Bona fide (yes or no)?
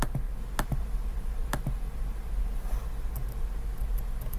yes